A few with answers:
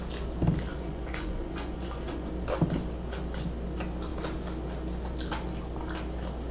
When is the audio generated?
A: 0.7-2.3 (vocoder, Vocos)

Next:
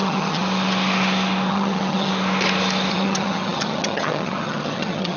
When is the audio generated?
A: 0.0-0.4 (vocoder, HiFi-GAN); 1.5-2.1; 2.9-5.2

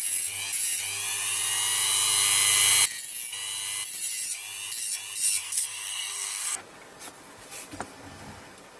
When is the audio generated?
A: 5.4-6.6 (codec, SNAC)

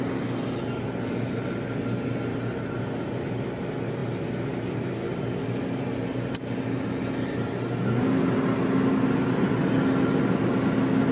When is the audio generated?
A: none

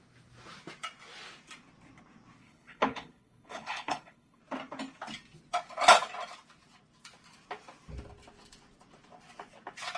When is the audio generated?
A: 2.4-4.4 (codec, HILCodec)

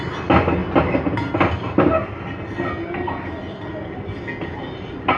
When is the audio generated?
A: none